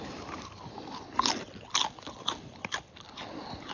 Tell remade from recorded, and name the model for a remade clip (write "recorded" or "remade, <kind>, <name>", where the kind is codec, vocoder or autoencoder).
recorded